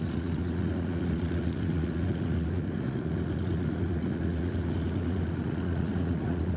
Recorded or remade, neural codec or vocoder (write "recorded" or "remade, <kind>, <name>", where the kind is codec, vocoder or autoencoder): remade, vocoder, Vocos